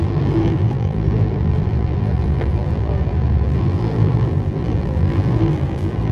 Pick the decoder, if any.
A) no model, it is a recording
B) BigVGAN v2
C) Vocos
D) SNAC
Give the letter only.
B